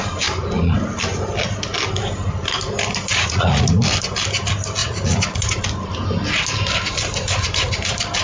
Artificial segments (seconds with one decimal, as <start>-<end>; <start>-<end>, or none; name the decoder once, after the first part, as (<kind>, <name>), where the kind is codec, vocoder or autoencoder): 3.1-3.7 (vocoder, Vocos); 4.8-5.5